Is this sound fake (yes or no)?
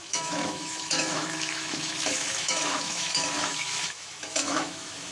yes